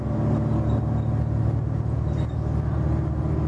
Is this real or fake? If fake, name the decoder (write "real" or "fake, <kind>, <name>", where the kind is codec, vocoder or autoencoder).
real